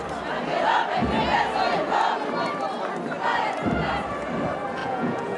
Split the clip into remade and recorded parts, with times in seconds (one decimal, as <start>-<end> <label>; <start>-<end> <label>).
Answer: 0.0-4.8 recorded; 4.8-5.4 remade